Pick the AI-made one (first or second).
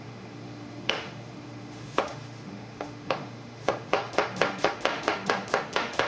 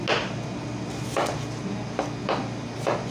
first